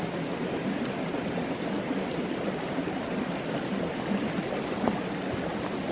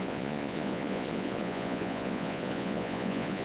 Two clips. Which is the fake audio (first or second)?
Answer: second